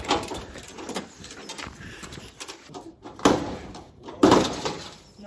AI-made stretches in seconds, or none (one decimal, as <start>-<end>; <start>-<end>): 0.0-5.3